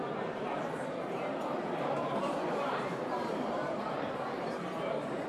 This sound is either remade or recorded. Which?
remade